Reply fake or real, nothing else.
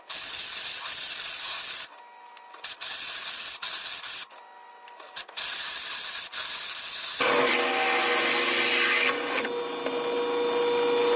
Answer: real